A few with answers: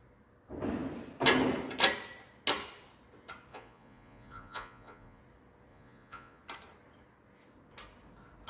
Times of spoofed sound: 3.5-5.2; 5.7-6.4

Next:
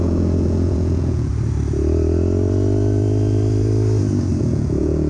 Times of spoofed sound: 0.0-1.3; 4.4-5.1

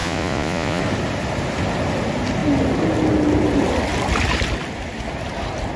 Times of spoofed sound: 0.0-0.8

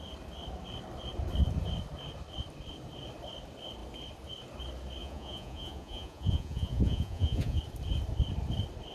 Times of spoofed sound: 5.0-7.6